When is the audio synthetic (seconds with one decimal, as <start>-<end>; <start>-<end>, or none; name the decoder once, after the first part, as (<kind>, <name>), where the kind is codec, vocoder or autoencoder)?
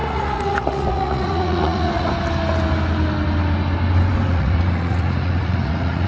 0.0-2.1 (vocoder, Vocos); 4.3-6.1